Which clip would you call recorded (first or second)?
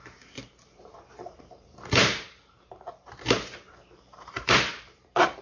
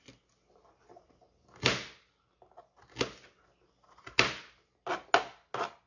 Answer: second